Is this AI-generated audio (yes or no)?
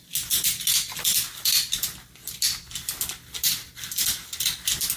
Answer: no